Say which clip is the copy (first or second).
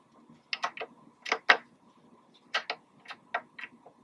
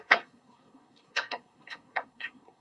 second